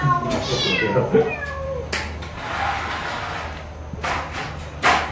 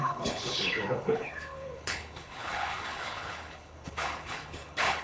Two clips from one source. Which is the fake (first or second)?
second